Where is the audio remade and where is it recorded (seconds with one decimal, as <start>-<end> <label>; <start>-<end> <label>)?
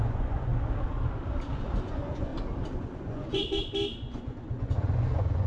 0.0-0.5 remade; 0.5-1.8 recorded; 1.8-2.3 remade; 2.3-2.8 recorded; 2.8-3.4 remade; 3.4-4.0 recorded; 4.0-5.5 remade